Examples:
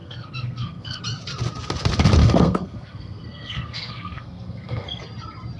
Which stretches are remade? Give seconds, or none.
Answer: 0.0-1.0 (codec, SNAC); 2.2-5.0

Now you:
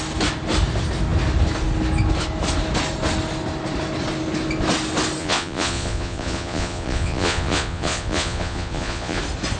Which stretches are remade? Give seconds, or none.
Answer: 5.2-9.2 (vocoder, Vocos)

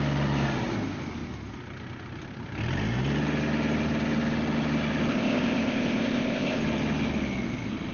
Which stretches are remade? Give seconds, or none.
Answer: 5.1-6.6 (codec, ZipCodec)

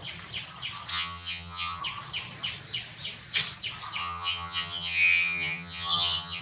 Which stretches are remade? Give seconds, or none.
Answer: 0.9-1.8 (vocoder, HiFi-GAN); 4.0-6.4

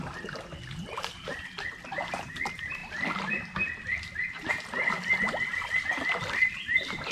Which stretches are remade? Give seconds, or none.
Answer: none

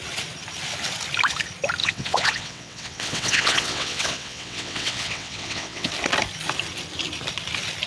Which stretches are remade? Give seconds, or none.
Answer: 1.8-5.9 (vocoder, WaveNeXt)

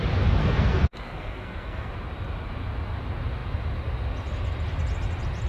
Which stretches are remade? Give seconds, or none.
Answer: 0.4-1.9 (codec, SNAC)